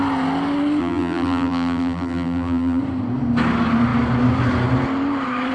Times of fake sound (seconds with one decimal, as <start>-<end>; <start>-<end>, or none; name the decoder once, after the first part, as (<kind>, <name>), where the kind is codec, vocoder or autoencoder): 0.8-2.8 (vocoder, BigVGAN v2)